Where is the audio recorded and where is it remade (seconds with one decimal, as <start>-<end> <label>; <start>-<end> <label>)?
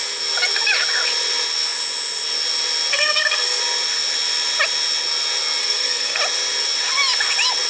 0.0-2.9 recorded; 2.9-3.6 remade; 3.6-5.6 recorded; 5.6-6.2 remade; 6.2-7.7 recorded